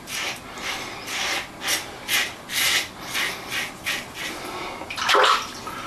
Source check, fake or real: real